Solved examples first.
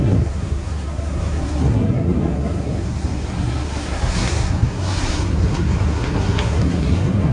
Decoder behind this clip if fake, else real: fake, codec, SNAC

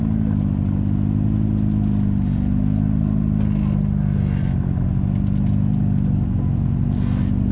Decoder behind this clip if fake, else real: real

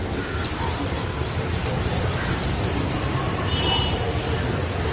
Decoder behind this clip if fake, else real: real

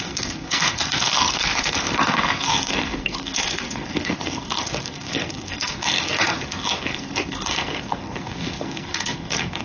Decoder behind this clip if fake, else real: fake, codec, SNAC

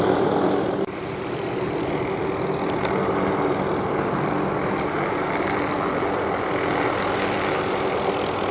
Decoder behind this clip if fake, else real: real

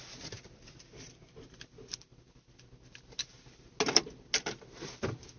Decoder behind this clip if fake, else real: real